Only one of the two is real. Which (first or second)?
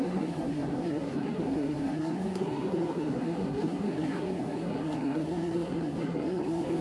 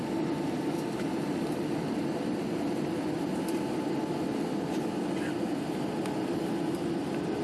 second